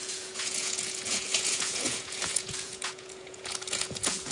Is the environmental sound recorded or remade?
remade